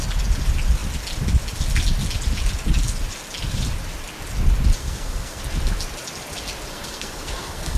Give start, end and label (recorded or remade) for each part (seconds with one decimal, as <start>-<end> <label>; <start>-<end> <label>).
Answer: 0.0-4.8 recorded; 4.8-5.4 remade; 5.4-6.7 recorded; 6.7-7.8 remade